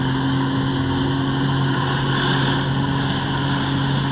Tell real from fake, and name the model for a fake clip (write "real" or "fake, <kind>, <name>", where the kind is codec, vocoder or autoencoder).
real